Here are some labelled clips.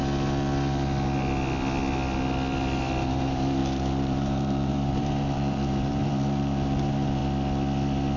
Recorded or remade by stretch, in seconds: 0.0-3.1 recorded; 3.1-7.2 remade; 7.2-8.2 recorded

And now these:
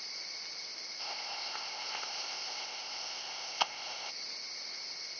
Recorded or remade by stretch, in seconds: 0.0-1.0 recorded; 1.0-4.1 remade; 4.1-5.2 recorded

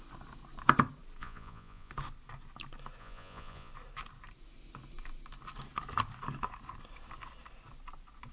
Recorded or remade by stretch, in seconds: 0.0-1.2 recorded; 1.2-1.9 remade; 1.9-3.0 recorded; 3.0-3.7 remade; 3.7-8.3 recorded

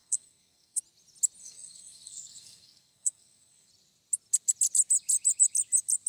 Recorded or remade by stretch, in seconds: 0.0-0.8 remade; 0.8-1.4 recorded; 1.4-3.7 remade; 3.7-6.1 recorded